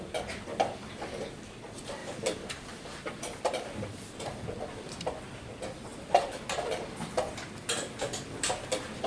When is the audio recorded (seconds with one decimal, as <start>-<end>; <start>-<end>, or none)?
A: 0.0-5.9; 6.4-9.1

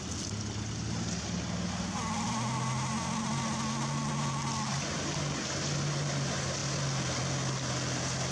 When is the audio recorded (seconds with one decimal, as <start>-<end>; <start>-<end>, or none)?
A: 0.0-8.3

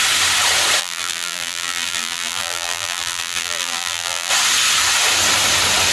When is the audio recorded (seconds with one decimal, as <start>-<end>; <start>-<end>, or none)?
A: 0.0-0.8; 4.3-5.9

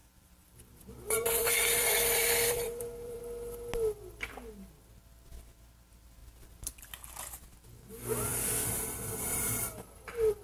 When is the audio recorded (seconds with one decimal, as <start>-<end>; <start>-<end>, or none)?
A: 3.2-6.2; 6.9-8.3

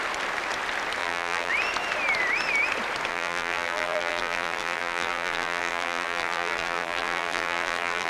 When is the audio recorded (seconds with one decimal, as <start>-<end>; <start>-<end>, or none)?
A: 0.0-1.0; 1.5-3.1